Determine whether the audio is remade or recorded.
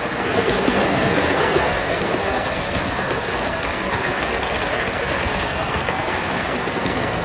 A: remade